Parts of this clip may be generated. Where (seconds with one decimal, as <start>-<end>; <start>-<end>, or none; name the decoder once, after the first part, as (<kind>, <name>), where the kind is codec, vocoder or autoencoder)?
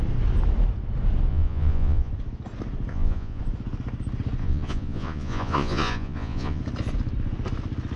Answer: 1.3-2.1 (vocoder, Vocos); 2.9-3.4; 4.4-6.6